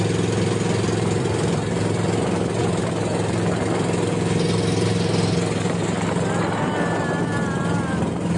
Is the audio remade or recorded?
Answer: recorded